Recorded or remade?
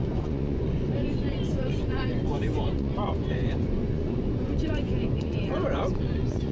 remade